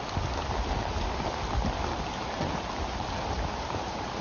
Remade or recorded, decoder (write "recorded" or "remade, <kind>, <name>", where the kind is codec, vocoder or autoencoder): recorded